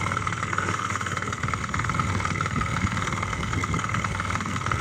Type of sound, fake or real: fake